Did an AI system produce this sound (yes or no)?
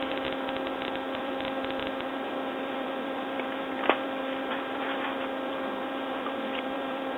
yes